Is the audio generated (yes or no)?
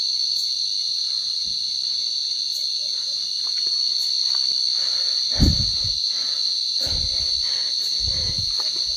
yes